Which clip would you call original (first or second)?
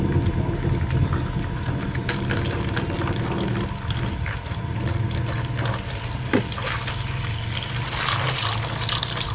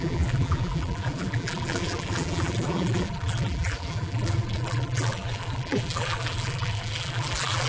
first